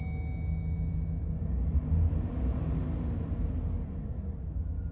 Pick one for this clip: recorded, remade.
recorded